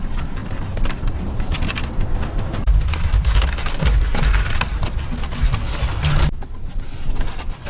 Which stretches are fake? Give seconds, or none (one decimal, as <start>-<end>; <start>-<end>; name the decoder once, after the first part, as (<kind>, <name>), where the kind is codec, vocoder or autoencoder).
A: none